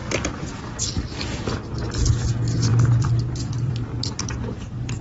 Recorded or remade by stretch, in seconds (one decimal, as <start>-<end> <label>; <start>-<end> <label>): 0.0-0.6 remade; 0.6-2.7 recorded; 2.7-3.7 remade; 3.7-5.0 recorded